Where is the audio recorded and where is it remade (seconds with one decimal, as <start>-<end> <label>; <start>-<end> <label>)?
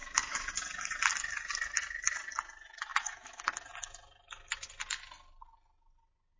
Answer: 0.0-0.5 remade; 0.5-2.9 recorded; 2.9-3.4 remade; 3.4-6.4 recorded